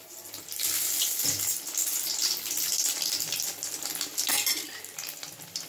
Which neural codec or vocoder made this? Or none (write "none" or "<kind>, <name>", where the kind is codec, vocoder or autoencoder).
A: none